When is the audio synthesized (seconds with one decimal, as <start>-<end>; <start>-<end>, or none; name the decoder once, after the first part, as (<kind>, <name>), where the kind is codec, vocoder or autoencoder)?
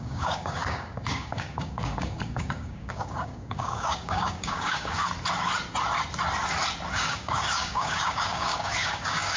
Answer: 0.0-5.0 (codec, DAC); 6.9-9.4